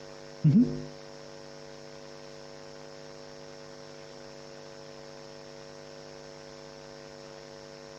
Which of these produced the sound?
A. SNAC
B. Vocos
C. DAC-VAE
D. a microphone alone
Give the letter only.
D